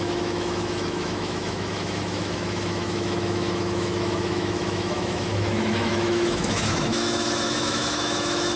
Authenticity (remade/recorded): remade